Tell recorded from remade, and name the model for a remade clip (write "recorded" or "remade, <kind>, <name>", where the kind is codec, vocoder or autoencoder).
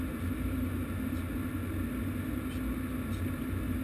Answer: recorded